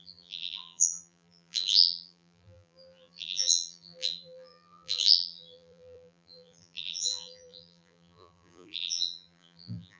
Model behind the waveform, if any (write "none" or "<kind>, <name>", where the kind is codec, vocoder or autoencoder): vocoder, BigVGAN v2